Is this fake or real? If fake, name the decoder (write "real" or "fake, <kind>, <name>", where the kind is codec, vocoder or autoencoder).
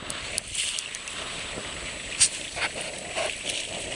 real